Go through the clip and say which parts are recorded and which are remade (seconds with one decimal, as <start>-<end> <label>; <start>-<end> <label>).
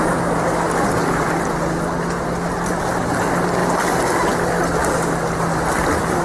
0.0-6.2 recorded